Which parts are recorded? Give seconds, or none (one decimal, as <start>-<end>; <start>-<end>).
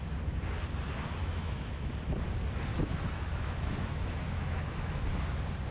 0.0-1.2; 1.9-2.7; 5.0-5.7